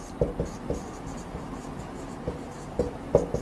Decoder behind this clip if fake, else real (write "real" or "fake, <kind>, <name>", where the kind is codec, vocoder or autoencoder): real